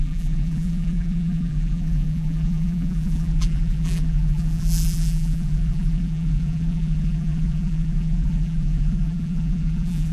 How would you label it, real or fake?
fake